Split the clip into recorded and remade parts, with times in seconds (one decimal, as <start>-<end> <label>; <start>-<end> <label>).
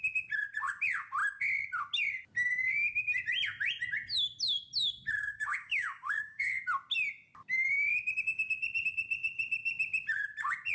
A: 0.0-5.2 recorded; 5.2-6.5 remade; 6.5-10.7 recorded